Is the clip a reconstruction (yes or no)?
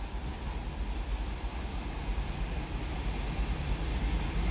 no